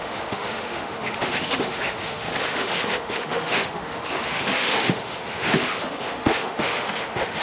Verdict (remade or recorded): remade